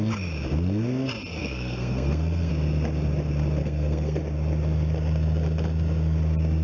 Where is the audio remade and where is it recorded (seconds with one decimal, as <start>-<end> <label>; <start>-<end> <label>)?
0.0-1.4 recorded; 1.4-2.5 remade; 2.5-3.6 recorded; 3.6-4.2 remade; 4.2-6.6 recorded